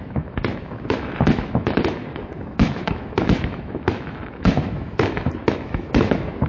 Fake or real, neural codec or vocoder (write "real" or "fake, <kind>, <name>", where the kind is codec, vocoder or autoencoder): fake, autoencoder, DAC-VAE